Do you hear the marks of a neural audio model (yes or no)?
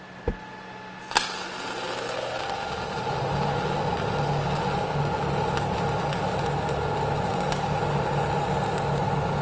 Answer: no